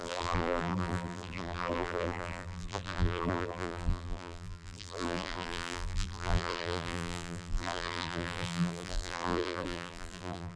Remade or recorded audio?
remade